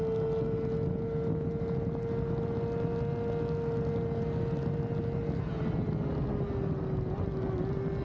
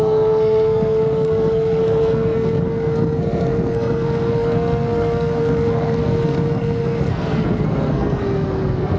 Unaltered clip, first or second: first